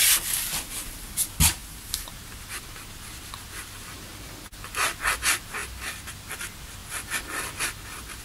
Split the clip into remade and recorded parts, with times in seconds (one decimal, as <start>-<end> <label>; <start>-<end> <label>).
0.0-1.6 recorded; 1.6-2.6 remade; 2.6-8.2 recorded